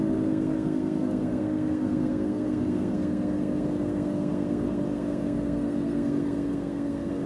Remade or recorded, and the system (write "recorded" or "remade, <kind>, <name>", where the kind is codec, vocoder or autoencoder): remade, codec, SNAC